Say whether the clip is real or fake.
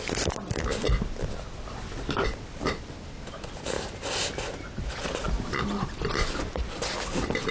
real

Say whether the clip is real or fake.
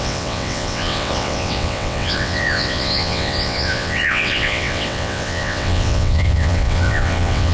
fake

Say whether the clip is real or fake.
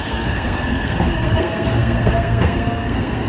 fake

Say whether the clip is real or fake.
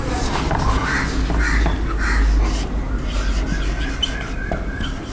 real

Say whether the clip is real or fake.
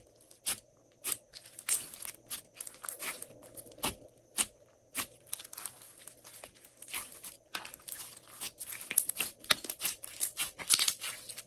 real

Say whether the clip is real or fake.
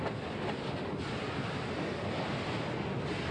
real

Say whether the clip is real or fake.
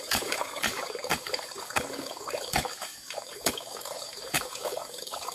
fake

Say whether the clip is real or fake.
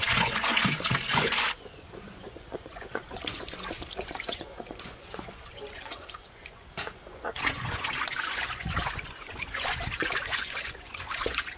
fake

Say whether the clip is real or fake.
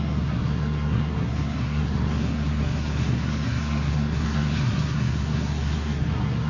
fake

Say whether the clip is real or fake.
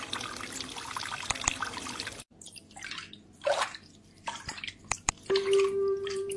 real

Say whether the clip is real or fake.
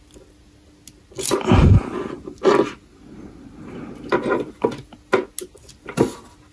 real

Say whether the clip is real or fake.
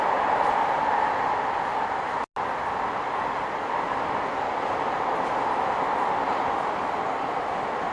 real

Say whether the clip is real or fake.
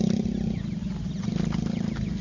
real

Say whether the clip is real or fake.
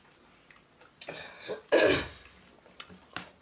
real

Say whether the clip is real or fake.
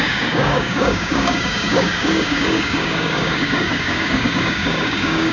fake